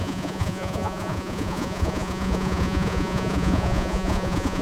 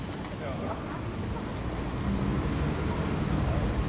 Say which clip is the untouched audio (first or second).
second